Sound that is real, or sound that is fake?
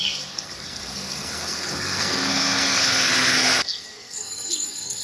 fake